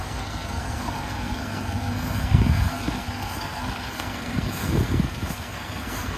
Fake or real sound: fake